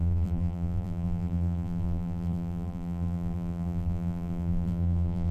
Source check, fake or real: fake